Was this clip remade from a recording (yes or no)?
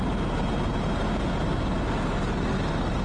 no